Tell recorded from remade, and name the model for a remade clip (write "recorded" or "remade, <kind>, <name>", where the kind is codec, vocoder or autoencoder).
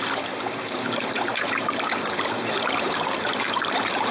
remade, vocoder, BigVGAN v2